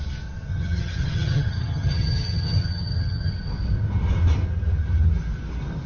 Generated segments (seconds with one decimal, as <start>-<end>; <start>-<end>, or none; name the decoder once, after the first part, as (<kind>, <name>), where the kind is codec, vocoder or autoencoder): 0.5-3.3 (vocoder, HiFi-GAN)